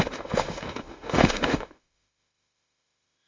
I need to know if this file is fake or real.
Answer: fake